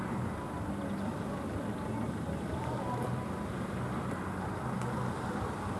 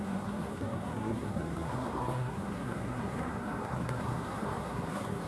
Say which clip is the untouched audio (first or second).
first